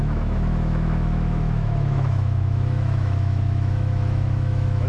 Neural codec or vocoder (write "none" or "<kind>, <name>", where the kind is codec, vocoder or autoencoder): autoencoder, DAC-VAE